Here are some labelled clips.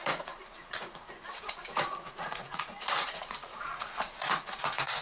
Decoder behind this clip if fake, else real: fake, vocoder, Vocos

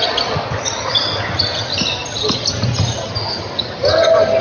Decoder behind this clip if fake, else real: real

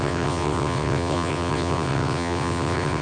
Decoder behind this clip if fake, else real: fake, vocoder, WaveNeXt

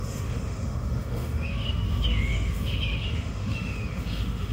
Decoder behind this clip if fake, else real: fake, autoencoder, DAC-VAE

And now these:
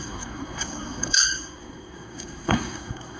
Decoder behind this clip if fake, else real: fake, codec, SNAC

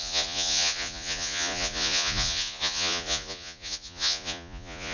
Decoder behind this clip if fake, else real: fake, vocoder, Vocos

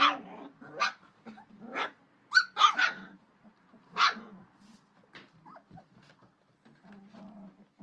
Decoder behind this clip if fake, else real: real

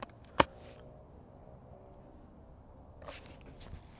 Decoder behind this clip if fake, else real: real